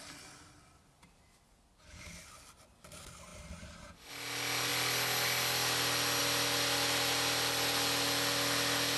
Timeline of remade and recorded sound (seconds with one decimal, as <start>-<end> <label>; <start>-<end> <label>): 0.0-9.0 recorded